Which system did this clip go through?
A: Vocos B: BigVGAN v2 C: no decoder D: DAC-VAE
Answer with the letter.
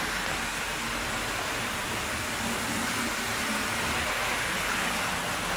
C